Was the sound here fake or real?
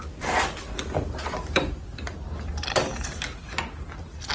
real